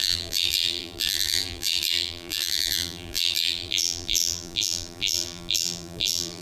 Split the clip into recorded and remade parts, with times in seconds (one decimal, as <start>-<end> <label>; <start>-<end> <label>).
0.0-6.4 remade

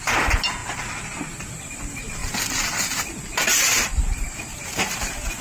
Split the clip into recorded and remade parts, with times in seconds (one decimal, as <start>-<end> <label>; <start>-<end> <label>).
0.0-5.4 recorded

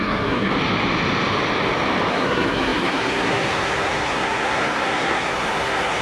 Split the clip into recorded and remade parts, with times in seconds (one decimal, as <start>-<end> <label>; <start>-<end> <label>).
0.0-0.5 remade; 0.5-2.1 recorded; 2.1-6.0 remade

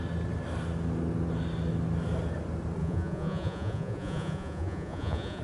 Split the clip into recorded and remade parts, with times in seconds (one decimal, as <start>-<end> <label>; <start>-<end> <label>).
0.0-2.8 recorded; 2.8-5.4 remade

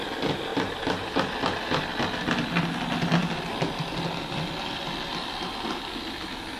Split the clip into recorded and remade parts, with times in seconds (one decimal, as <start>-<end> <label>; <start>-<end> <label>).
0.0-0.5 recorded; 0.5-1.3 remade; 1.3-6.6 recorded